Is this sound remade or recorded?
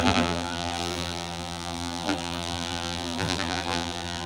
remade